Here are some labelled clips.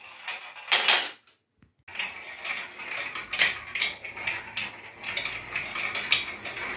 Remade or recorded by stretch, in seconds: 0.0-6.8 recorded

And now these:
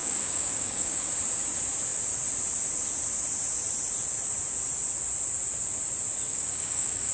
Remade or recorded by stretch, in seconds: 0.0-1.1 remade; 1.1-6.3 recorded; 6.3-7.1 remade